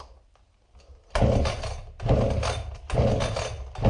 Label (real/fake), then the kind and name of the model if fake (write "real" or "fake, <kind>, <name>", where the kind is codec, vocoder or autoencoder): real